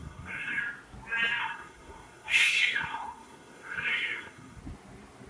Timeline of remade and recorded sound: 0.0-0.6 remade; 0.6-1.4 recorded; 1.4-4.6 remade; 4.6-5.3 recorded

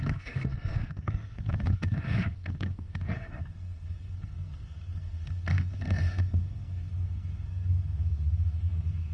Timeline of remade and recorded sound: 0.0-9.1 remade

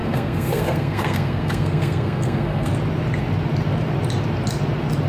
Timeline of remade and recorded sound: 0.0-2.7 remade; 2.7-5.1 recorded